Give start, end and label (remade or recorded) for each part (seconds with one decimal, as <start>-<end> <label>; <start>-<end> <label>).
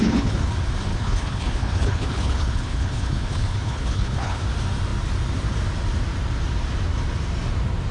0.0-0.5 remade; 0.5-0.9 recorded; 0.9-4.4 remade; 4.4-7.9 recorded